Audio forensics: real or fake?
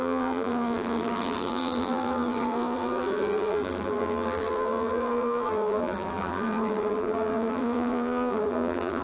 fake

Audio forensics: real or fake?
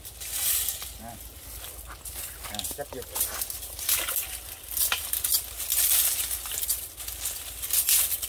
real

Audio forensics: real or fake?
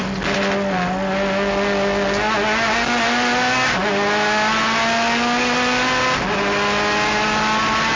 real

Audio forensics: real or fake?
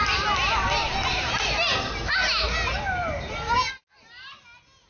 real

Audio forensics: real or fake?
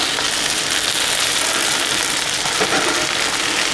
real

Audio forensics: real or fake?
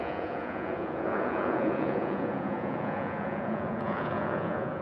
fake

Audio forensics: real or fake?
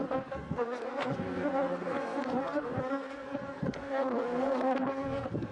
fake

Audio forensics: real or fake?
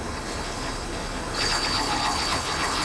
fake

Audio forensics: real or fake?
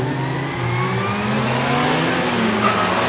real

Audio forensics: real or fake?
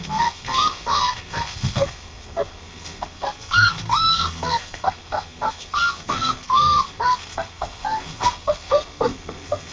fake